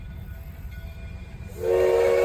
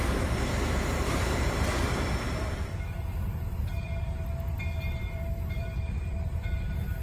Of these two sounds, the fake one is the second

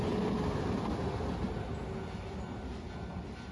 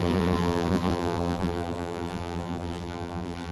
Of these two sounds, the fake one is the second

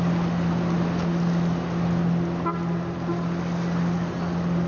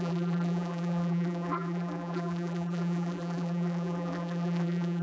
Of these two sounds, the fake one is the second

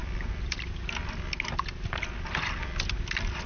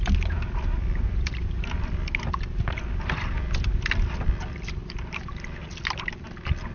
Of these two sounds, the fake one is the second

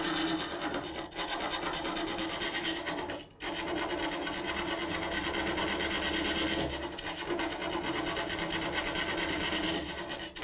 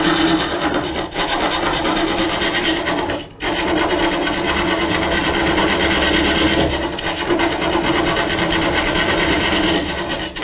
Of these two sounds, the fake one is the second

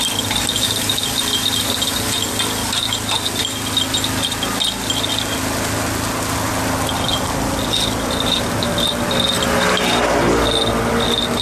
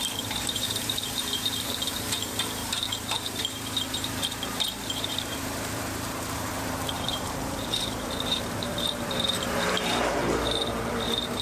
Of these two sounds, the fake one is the second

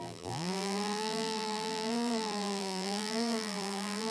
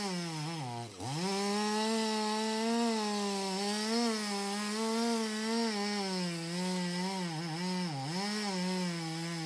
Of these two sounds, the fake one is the first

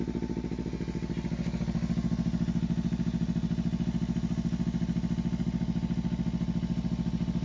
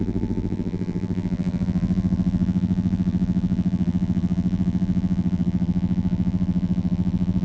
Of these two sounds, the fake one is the second